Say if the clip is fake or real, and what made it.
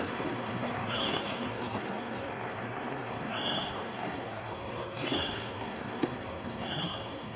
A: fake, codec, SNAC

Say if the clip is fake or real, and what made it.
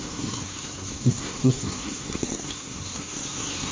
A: fake, codec, SNAC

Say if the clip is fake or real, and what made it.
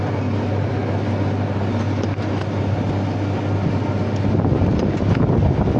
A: real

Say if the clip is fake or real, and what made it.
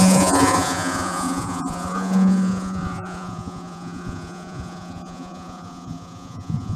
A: fake, vocoder, Vocos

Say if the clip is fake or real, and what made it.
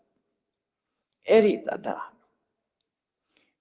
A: fake, codec, DAC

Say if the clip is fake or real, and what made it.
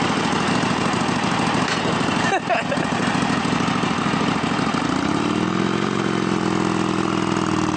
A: real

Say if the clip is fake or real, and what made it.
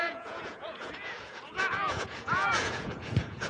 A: fake, vocoder, Vocos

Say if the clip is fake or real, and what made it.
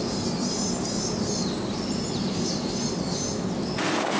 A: real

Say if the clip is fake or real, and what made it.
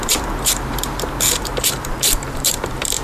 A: fake, vocoder, BigVGAN v2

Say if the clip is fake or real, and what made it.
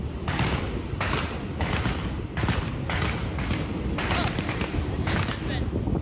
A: real